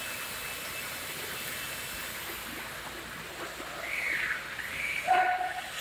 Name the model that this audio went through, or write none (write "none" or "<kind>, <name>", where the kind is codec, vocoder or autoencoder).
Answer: none